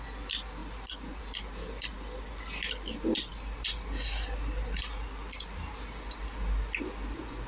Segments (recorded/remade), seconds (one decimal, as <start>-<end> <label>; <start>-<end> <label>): 0.0-7.5 recorded